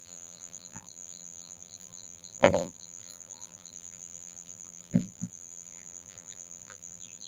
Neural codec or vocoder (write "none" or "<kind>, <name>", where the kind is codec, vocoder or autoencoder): vocoder, BigVGAN v2